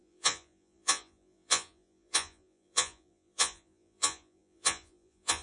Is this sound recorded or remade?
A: remade